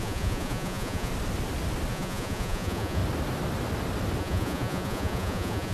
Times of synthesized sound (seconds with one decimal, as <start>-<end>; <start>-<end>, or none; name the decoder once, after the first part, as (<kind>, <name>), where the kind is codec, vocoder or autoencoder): 0.0-1.1 (vocoder, Vocos); 1.9-3.0; 4.2-5.7